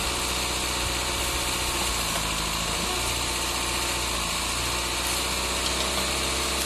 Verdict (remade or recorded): recorded